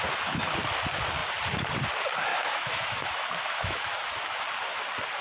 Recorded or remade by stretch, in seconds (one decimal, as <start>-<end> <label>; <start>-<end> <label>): 0.0-2.3 recorded; 2.3-3.8 remade; 3.8-5.2 recorded